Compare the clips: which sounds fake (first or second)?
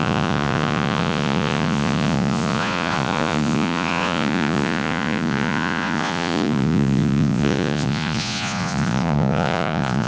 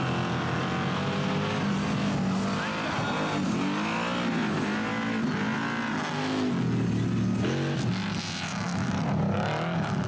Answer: first